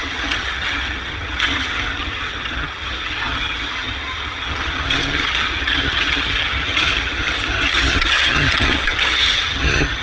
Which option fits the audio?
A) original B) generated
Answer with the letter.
B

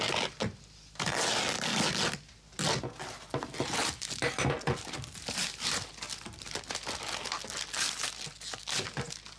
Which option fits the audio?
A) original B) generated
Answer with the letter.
A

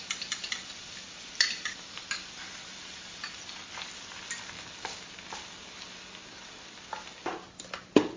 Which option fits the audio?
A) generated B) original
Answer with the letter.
B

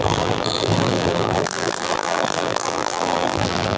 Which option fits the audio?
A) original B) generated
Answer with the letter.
B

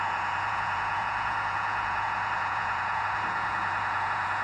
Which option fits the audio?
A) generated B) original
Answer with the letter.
A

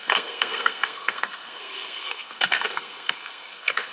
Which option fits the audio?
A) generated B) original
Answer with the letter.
A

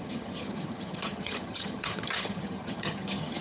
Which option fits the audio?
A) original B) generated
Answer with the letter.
B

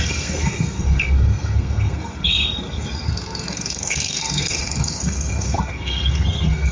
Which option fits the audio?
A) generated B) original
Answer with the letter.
A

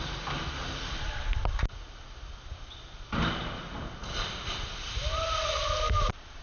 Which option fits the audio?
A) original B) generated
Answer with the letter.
A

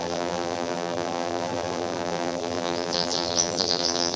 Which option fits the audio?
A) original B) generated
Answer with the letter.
B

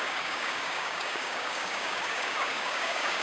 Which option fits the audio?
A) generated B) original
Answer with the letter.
A